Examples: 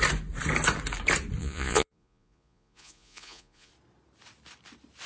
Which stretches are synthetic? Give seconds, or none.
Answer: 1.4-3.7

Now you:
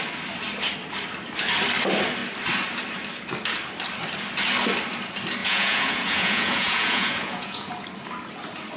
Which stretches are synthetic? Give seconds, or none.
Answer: 5.4-7.7

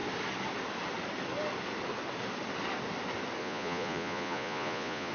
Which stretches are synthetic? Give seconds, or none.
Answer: 3.4-5.1

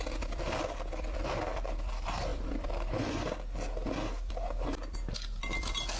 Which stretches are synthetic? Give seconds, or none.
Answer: none

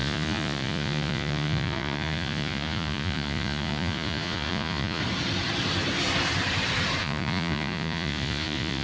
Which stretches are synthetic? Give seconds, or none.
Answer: 0.0-5.0; 7.0-8.8

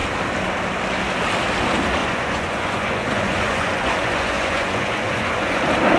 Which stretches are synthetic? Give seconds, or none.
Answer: 2.0-5.6

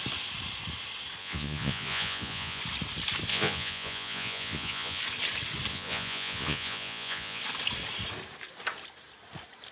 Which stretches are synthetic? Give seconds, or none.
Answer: 1.2-2.6; 3.3-5.0; 5.7-7.4

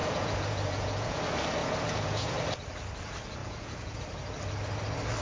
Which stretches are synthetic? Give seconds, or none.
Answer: 0.0-1.2; 1.6-2.3; 3.4-4.0